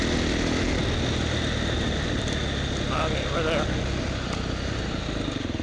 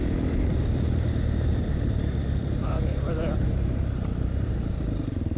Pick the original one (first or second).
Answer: first